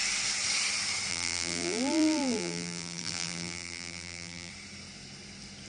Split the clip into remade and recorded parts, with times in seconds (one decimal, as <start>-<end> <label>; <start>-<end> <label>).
0.0-1.1 recorded; 1.1-4.5 remade; 4.5-5.7 recorded